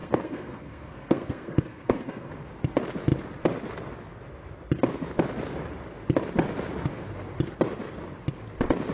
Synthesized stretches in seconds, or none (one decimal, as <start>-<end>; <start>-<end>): 0.0-2.3